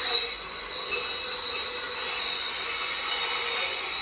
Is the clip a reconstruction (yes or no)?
yes